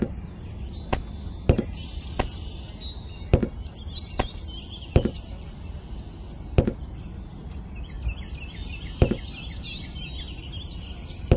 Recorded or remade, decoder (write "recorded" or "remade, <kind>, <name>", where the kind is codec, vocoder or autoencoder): recorded